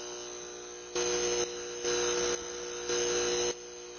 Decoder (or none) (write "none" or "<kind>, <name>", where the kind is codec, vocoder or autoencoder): none